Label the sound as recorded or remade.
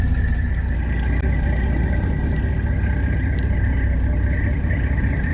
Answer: recorded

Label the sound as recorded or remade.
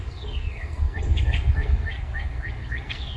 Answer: remade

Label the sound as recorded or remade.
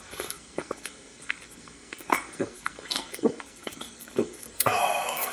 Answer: remade